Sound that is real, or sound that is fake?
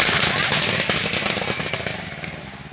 real